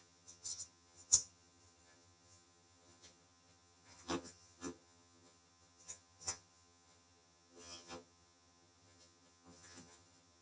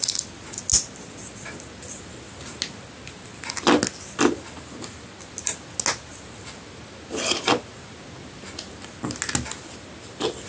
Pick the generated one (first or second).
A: first